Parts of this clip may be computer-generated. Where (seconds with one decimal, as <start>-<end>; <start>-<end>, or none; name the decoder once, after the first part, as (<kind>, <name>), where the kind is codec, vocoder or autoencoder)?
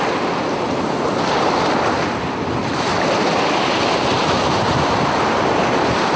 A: 2.9-6.2 (vocoder, BigVGAN v2)